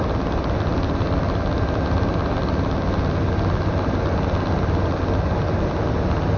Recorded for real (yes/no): yes